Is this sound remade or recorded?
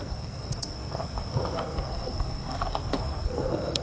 remade